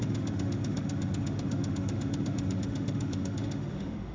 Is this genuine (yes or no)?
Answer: no